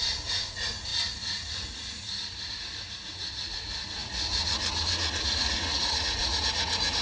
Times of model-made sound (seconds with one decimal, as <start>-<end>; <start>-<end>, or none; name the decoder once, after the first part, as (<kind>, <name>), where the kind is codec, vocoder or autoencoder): 0.0-7.0 (vocoder, Vocos)